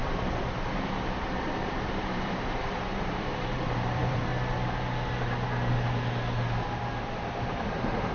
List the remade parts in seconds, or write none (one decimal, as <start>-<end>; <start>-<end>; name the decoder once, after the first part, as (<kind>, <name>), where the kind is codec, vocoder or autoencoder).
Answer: 0.0-4.3 (vocoder, BigVGAN v2); 7.0-8.1